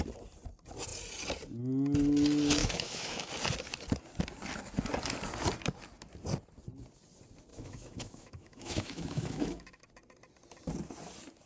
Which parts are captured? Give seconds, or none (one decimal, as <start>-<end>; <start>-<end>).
0.0-2.6; 3.3-7.5; 9.8-11.5